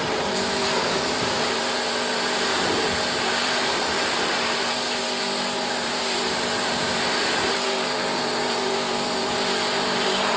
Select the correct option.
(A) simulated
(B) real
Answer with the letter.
A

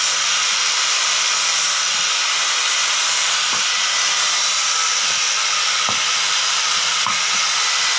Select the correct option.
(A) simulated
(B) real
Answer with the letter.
B